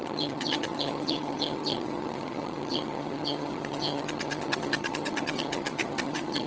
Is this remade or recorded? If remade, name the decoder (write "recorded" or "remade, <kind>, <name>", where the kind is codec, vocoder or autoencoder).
remade, vocoder, HiFi-GAN